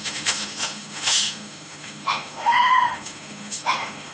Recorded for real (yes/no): no